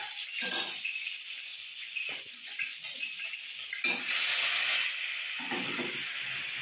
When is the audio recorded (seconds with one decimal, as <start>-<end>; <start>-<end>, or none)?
0.0-0.4; 1.1-1.5; 2.8-6.6